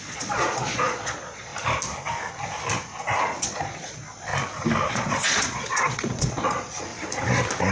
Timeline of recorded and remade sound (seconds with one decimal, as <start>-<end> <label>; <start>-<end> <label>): 0.0-1.5 remade; 1.5-3.2 recorded; 3.2-4.3 remade; 4.3-4.9 recorded; 4.9-6.9 remade; 6.9-7.7 recorded